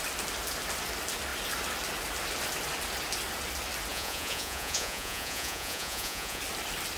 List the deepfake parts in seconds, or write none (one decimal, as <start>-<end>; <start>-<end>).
3.9-6.4